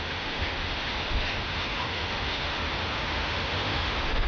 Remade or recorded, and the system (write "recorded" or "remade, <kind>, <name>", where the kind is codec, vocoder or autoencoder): remade, autoencoder, DAC-VAE